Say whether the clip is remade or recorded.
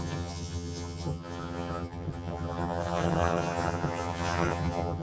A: remade